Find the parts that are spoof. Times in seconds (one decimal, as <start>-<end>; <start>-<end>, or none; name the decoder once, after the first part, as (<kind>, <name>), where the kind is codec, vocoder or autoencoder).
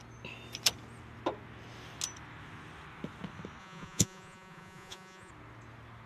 3.6-5.3 (vocoder, Vocos)